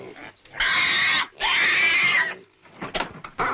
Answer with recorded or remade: recorded